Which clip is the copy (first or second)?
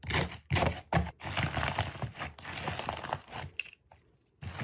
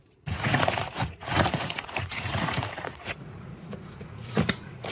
second